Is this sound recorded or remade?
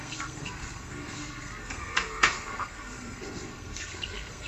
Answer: remade